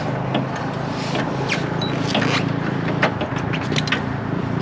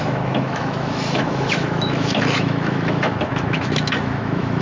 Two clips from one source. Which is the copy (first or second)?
second